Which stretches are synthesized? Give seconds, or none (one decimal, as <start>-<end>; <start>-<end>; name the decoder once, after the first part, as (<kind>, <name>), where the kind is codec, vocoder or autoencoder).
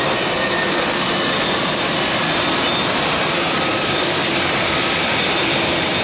1.6-5.2 (vocoder, BigVGAN v2)